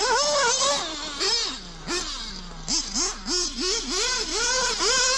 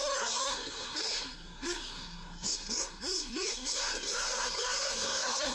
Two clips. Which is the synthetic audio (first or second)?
second